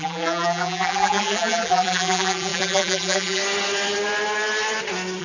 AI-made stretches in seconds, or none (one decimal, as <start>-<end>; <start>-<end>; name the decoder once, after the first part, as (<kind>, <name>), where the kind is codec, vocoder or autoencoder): 0.0-3.4 (vocoder, BigVGAN v2)